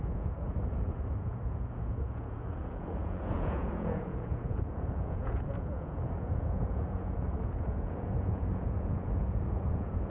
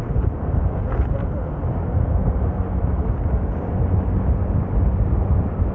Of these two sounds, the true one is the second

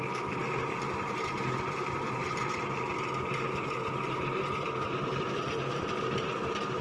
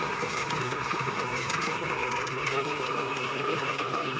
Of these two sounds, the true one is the first